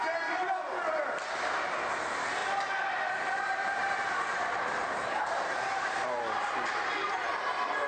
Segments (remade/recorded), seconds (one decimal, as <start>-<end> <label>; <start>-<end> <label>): 0.0-2.4 recorded; 2.4-6.2 remade; 6.2-7.9 recorded